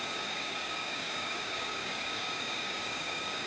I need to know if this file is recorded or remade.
remade